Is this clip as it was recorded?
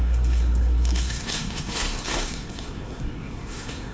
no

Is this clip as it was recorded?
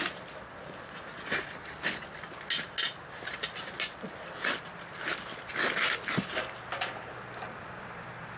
yes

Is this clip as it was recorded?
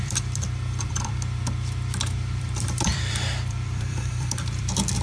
no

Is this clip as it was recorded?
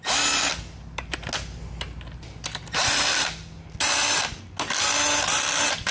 yes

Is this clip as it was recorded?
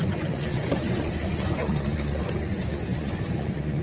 no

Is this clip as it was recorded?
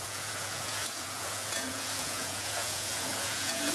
no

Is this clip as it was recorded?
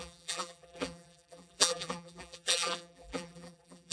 no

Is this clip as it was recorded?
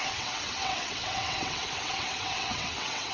no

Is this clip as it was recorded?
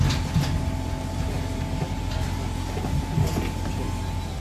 yes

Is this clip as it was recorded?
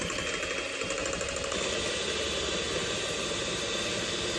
yes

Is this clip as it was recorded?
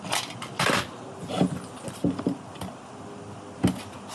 yes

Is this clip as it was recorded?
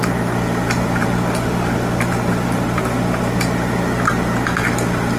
yes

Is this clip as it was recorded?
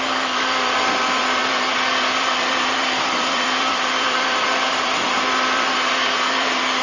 no